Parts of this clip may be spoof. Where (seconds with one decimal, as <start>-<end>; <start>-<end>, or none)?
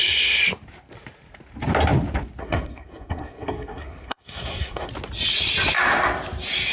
2.4-4.9